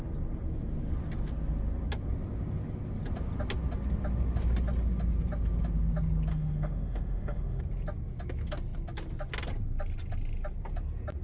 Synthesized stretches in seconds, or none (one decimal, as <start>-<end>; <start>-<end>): 6.3-7.6